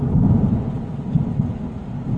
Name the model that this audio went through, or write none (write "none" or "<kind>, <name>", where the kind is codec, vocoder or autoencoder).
none